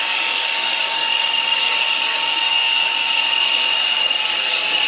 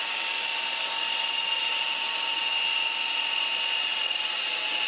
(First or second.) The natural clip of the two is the second